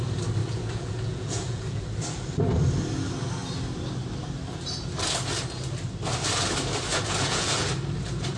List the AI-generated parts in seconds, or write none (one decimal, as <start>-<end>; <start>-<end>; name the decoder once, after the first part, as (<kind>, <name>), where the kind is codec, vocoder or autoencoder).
0.4-1.8 (vocoder, Vocos); 6.9-7.7